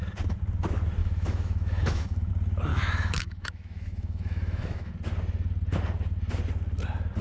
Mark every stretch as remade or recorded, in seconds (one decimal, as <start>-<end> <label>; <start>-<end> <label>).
0.0-1.0 recorded; 1.0-2.3 remade; 2.3-2.7 recorded; 2.7-4.9 remade; 4.9-7.2 recorded